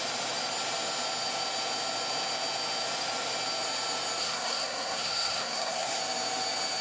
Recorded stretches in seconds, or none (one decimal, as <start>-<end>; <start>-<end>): 0.0-4.2; 6.0-6.8